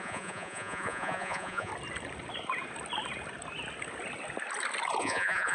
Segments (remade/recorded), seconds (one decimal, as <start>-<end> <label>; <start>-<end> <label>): 0.0-1.7 remade; 1.7-5.0 recorded; 5.0-5.5 remade